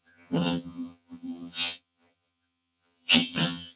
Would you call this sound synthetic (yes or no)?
yes